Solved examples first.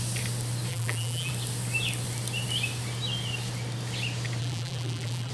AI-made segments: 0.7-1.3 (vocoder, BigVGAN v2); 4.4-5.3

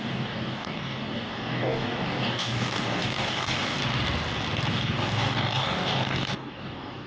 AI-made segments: 0.0-3.8 (codec, DAC); 4.7-7.1

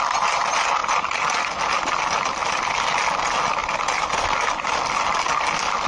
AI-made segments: none

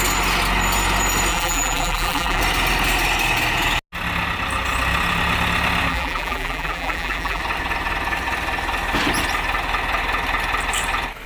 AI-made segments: 1.3-2.4 (vocoder, BigVGAN v2); 5.9-7.4

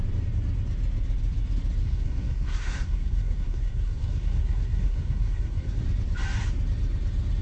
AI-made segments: 1.8-5.8 (codec, SNAC)

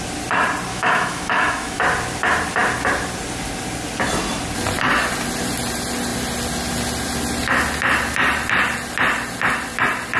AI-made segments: 0.7-1.8 (autoencoder, DAC-VAE)

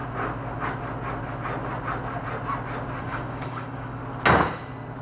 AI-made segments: 3.0-4.0 (codec, DAC)